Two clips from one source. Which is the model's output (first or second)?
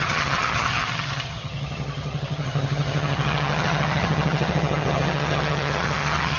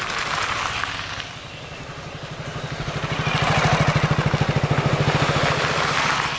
first